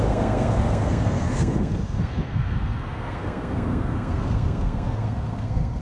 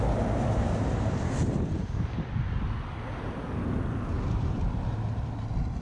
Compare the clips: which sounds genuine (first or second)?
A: second